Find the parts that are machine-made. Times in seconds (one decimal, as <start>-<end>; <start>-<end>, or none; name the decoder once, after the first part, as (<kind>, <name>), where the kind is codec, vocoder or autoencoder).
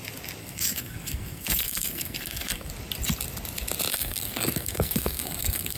0.4-2.7 (codec, SNAC); 3.9-5.8